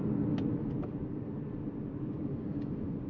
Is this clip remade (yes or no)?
no